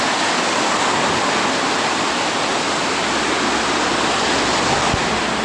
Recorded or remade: recorded